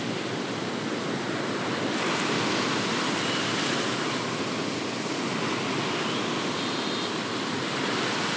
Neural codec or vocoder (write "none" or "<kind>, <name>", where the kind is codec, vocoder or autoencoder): none